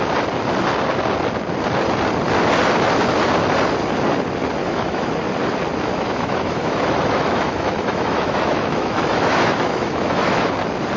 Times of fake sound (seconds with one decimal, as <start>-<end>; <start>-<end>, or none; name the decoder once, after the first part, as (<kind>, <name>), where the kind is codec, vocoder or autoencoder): 4.6-5.1 (autoencoder, DAC-VAE); 5.9-10.5